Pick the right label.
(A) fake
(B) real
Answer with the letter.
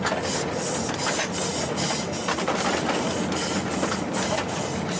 B